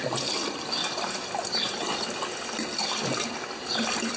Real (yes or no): yes